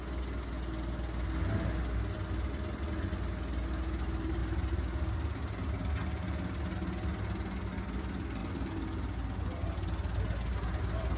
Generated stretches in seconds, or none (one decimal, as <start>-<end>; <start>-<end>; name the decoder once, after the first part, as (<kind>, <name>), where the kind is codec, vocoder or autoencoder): none